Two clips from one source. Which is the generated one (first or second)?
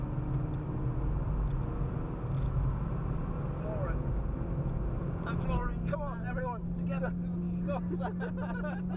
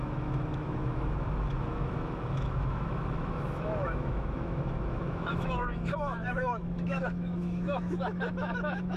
second